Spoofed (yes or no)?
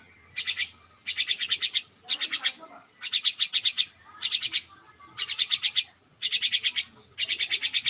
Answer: no